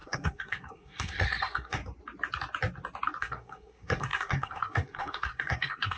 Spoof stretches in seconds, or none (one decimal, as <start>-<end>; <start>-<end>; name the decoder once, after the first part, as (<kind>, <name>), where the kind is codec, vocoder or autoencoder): 0.0-1.8 (codec, SNAC); 3.2-6.0